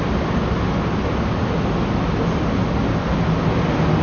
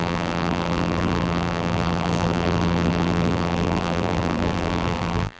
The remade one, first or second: second